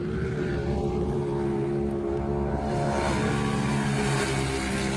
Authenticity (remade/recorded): recorded